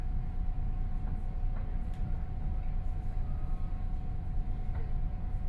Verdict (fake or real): real